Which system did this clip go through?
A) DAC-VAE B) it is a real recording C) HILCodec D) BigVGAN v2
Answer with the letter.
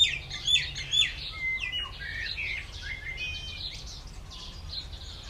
B